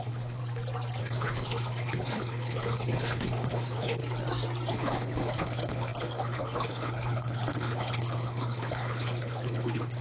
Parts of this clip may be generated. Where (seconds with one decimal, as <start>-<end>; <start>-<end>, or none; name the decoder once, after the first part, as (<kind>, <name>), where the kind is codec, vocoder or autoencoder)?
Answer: 0.0-0.4 (codec, HILCodec); 1.0-4.0; 4.7-10.0